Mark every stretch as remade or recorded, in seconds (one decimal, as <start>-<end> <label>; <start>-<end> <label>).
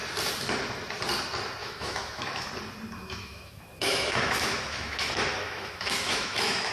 0.0-1.6 recorded; 1.6-2.5 remade; 2.5-3.0 recorded; 3.0-6.7 remade